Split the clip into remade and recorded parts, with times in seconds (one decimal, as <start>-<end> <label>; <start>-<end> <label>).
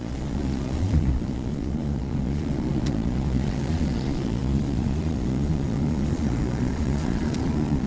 0.0-7.9 remade